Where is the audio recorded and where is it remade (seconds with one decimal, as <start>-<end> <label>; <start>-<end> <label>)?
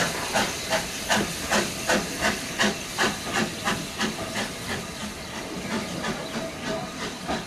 0.0-7.5 recorded